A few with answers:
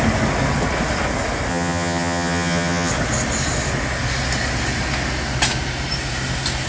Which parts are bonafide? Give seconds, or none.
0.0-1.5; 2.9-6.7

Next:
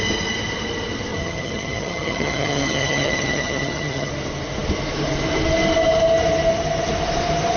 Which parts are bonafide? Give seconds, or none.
0.0-1.1; 4.1-7.6